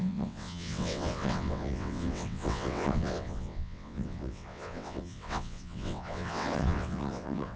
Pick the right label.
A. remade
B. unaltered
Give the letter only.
A